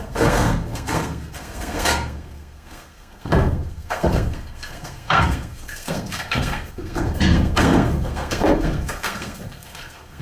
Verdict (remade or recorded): remade